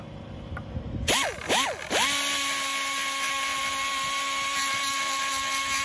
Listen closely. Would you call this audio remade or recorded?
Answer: recorded